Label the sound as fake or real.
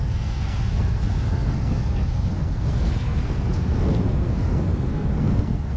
fake